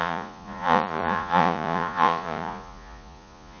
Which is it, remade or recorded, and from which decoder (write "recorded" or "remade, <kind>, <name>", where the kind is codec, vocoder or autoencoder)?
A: remade, vocoder, Vocos